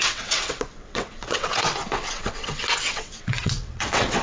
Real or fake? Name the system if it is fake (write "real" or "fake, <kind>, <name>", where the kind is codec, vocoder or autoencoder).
fake, vocoder, WaveNeXt